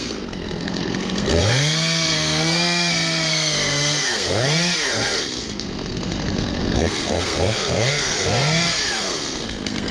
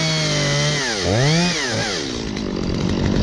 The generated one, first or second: first